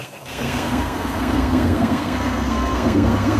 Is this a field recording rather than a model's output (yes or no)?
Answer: no